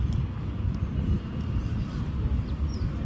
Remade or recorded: recorded